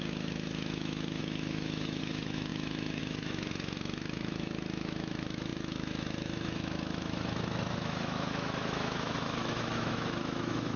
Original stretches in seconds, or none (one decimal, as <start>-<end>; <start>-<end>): none